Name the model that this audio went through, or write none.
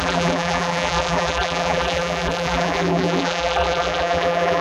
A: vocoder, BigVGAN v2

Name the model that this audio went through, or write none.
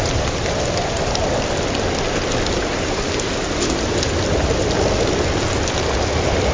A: none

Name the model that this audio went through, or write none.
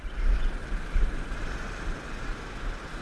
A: none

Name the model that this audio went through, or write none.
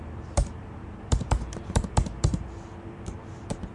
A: vocoder, BigVGAN v2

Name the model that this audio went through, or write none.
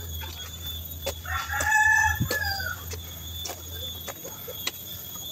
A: vocoder, BigVGAN v2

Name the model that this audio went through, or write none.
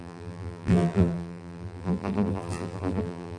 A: vocoder, BigVGAN v2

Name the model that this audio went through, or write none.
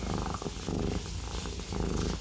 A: none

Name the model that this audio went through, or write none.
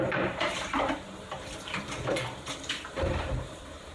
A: vocoder, BigVGAN v2